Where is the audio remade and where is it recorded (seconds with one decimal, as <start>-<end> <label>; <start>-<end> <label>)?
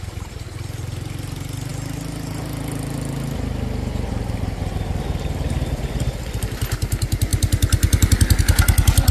0.0-9.1 recorded